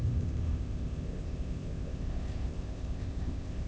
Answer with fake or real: fake